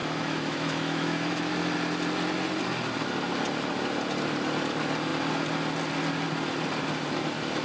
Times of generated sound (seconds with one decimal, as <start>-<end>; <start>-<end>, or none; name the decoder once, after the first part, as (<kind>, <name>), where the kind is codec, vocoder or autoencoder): 0.0-1.5 (autoencoder, DAC-VAE)